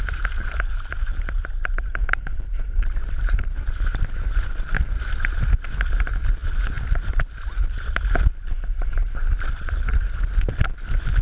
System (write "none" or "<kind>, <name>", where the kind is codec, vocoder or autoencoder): none